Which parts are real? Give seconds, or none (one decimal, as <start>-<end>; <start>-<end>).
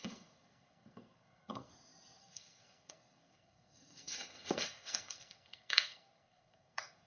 1.7-2.2